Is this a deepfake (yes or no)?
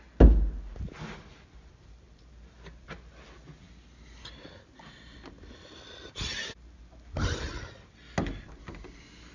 no